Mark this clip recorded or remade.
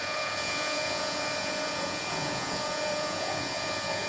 remade